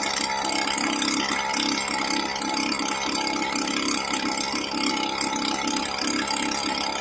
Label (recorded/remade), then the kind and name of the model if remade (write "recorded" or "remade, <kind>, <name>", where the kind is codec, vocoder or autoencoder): recorded